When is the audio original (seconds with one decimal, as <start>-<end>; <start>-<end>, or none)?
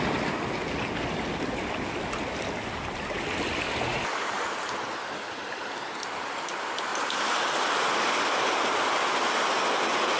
0.0-10.2